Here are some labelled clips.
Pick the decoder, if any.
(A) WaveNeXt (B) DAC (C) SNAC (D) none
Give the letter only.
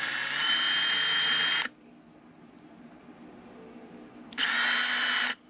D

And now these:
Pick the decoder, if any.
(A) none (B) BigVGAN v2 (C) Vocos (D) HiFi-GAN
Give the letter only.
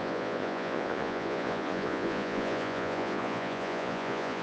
C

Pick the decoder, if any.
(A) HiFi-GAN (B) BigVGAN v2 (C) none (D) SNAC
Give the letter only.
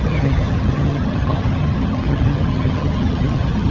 A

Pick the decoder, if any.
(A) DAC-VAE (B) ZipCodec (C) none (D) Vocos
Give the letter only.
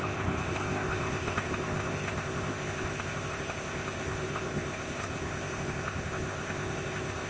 B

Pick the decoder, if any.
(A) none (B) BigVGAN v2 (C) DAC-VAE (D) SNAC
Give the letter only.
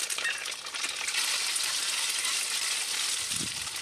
A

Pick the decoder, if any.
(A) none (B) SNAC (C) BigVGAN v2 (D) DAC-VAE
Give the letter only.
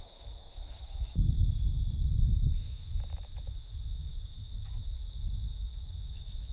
D